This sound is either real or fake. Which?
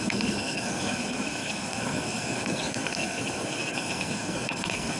fake